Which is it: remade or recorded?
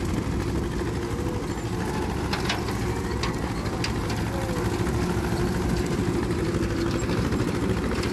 recorded